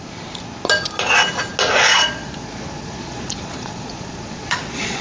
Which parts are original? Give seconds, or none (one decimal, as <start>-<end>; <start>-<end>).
0.0-1.8